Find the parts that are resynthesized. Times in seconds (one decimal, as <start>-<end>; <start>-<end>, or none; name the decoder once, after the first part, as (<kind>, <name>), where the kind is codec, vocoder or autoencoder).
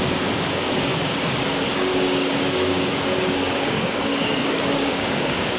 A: 0.0-5.6 (codec, DAC)